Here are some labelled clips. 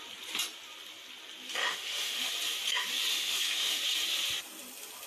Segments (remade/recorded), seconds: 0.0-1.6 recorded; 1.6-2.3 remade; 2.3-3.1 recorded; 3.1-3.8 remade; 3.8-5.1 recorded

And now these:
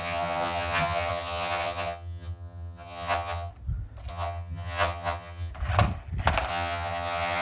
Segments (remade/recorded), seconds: 0.0-3.5 remade; 3.5-4.1 recorded; 4.1-5.5 remade; 5.5-6.5 recorded; 6.5-7.4 remade

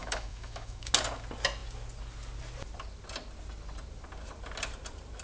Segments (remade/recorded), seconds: 0.0-0.9 remade; 0.9-5.2 recorded

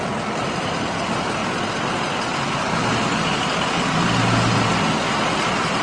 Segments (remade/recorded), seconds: 0.0-5.8 recorded

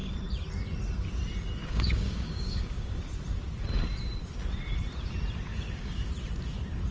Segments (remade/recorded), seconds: 0.0-1.6 recorded; 1.6-3.0 remade; 3.0-5.5 recorded; 5.5-6.1 remade; 6.1-6.9 recorded

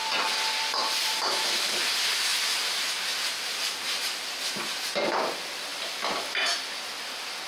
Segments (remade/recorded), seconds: 0.0-0.5 recorded; 0.5-2.3 remade; 2.3-4.0 recorded; 4.0-7.5 remade

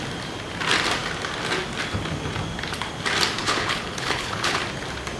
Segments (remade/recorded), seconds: 0.0-3.4 recorded; 3.4-4.6 remade; 4.6-5.2 recorded